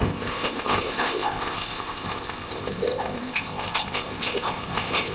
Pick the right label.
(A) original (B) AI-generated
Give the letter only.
B